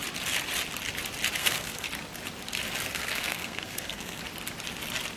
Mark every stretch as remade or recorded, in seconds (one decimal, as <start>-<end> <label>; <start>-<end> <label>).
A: 0.0-1.4 recorded; 1.4-1.9 remade; 1.9-2.9 recorded; 2.9-4.2 remade; 4.2-5.2 recorded